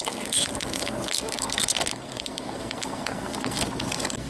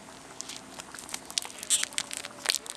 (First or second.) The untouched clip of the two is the second